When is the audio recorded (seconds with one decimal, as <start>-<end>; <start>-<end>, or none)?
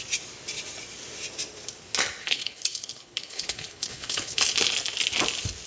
0.0-2.2; 4.4-5.7